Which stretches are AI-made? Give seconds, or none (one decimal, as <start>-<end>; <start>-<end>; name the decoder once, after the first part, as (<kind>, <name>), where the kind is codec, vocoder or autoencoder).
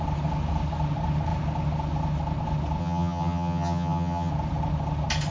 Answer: 2.8-4.3 (vocoder, HiFi-GAN)